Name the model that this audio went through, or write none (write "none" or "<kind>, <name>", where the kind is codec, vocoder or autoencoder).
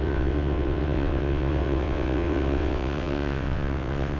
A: vocoder, WaveNeXt